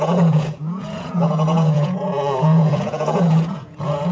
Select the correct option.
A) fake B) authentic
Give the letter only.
A